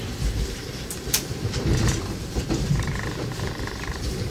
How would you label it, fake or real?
fake